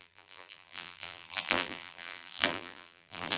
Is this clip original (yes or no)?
no